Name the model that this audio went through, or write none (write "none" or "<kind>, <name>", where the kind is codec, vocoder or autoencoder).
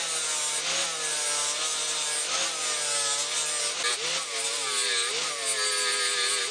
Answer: none